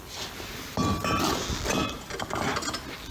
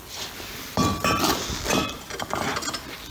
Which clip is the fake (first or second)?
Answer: second